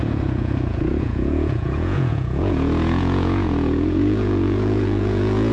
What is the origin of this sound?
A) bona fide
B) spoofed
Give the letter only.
B